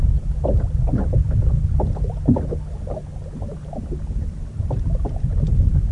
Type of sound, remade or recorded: recorded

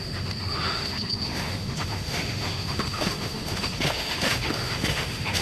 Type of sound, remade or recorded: remade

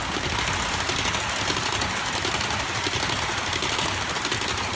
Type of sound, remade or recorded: recorded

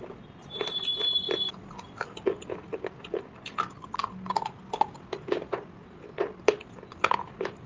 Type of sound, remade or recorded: recorded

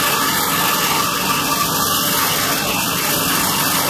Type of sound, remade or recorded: recorded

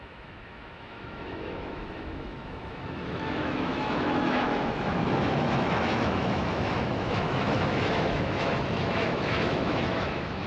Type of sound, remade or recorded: remade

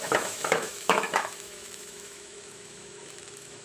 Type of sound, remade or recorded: remade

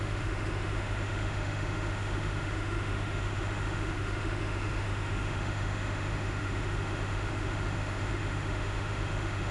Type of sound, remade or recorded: remade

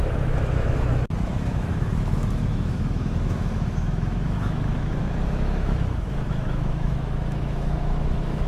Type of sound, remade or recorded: remade